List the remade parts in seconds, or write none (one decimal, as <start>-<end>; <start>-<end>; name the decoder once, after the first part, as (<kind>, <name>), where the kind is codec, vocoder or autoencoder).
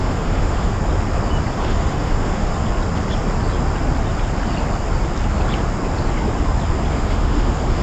0.0-0.8 (autoencoder, DAC-VAE); 1.6-2.5; 6.9-7.8